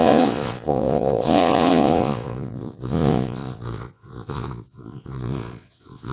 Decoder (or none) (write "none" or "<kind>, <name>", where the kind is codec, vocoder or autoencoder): vocoder, Vocos